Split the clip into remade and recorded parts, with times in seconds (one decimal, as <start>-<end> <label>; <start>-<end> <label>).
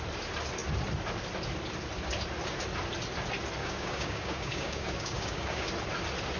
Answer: 0.0-3.6 recorded; 3.6-5.7 remade; 5.7-6.4 recorded